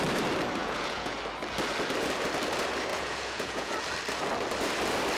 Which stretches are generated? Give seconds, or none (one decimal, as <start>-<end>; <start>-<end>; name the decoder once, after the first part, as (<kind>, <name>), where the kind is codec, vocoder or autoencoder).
0.6-1.2 (vocoder, Vocos); 2.9-3.7